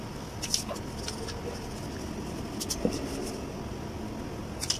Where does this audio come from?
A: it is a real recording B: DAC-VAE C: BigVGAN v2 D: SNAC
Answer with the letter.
A